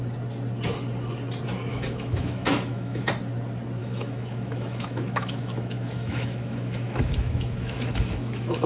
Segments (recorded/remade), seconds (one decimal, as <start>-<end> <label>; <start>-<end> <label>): 0.0-1.7 recorded; 1.7-3.1 remade; 3.1-3.8 recorded; 3.8-8.7 remade